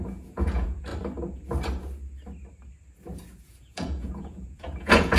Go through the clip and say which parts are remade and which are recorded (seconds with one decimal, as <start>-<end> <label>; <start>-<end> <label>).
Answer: 0.0-0.9 remade; 0.9-3.4 recorded; 3.4-5.2 remade